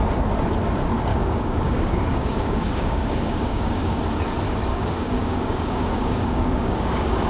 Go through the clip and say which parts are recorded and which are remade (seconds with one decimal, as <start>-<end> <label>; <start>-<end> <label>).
0.0-1.1 recorded; 1.1-4.0 remade; 4.0-4.7 recorded; 4.7-7.3 remade